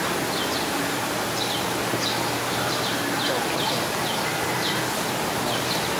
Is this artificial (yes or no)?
no